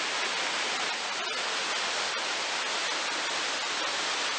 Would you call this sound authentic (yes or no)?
yes